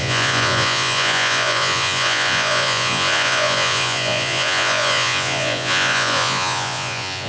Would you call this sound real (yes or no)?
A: no